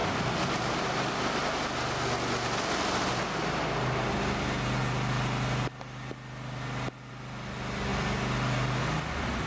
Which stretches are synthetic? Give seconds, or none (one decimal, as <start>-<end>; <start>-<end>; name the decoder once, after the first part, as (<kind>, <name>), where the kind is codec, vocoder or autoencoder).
none